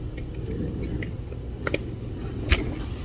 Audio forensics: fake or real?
real